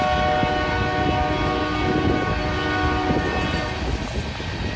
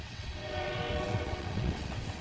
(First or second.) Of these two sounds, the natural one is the first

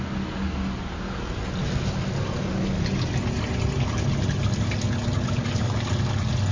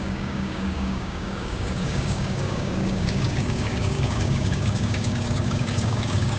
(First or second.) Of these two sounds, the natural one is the first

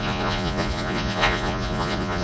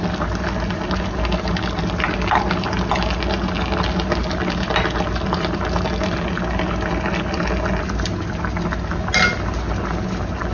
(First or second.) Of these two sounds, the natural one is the second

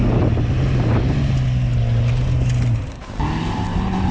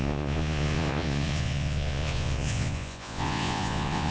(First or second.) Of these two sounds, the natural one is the first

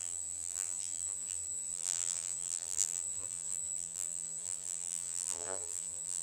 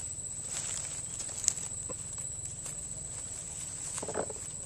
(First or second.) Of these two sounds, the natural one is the second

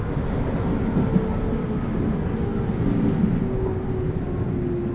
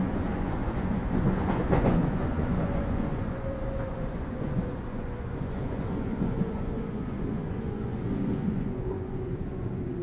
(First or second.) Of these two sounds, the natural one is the first